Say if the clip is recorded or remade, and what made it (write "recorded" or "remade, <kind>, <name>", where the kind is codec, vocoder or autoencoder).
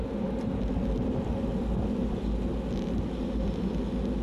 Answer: recorded